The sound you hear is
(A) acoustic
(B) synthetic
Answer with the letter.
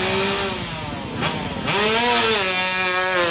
A